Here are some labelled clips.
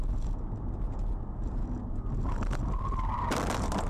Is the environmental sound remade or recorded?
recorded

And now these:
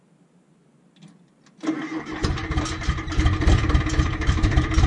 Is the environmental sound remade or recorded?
recorded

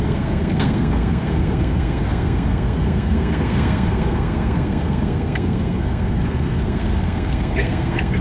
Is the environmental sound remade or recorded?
remade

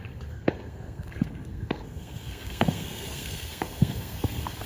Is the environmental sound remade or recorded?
remade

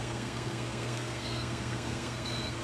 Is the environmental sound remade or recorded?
remade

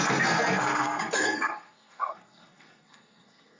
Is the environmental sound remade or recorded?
remade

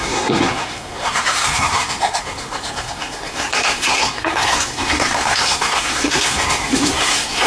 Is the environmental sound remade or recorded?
remade